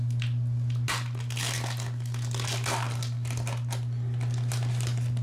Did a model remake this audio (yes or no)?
no